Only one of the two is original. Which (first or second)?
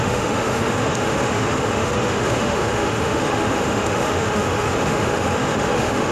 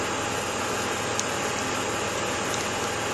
second